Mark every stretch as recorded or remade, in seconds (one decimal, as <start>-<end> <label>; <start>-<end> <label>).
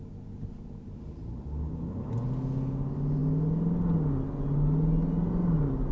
0.0-5.9 recorded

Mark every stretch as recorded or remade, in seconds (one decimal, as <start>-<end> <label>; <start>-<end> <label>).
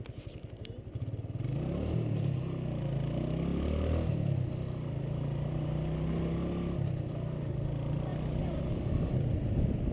0.0-9.9 recorded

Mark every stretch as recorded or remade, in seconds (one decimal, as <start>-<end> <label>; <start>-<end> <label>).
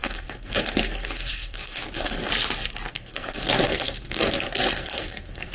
0.0-2.3 remade; 2.3-2.9 recorded; 2.9-5.5 remade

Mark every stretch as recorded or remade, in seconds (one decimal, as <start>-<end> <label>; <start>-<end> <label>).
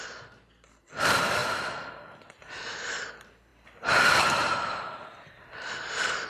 0.0-6.3 recorded